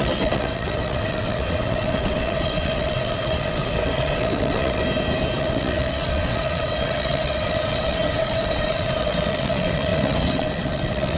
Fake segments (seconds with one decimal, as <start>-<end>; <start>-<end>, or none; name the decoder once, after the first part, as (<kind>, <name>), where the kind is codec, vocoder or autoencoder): 0.0-4.8 (vocoder, WaveNeXt); 5.4-11.2